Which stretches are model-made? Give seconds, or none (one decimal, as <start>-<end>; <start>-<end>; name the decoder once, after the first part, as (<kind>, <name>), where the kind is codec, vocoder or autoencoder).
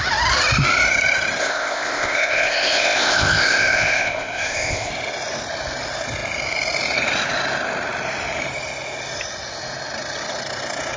1.4-4.9 (codec, ZipCodec)